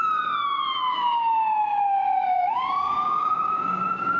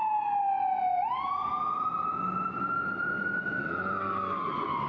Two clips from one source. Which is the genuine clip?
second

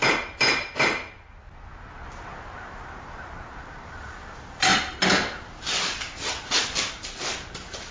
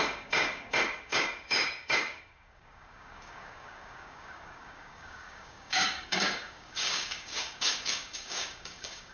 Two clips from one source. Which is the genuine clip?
first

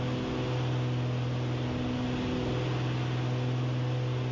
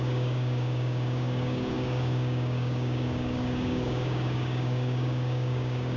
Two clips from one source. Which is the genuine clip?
first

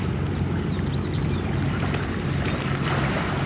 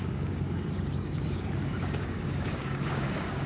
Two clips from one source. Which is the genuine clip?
first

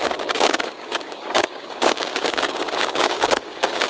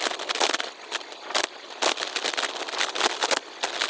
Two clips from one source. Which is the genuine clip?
second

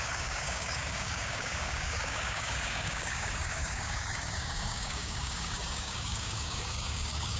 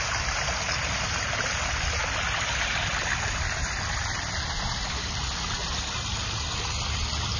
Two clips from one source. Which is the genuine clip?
second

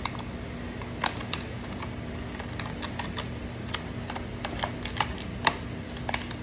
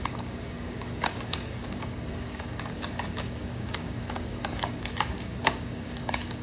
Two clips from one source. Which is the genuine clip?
first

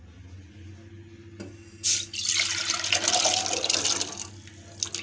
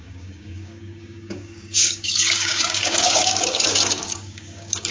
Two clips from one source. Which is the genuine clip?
first